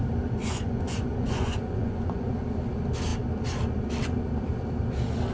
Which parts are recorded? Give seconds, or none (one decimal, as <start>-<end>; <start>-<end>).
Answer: 0.0-0.4; 2.3-5.3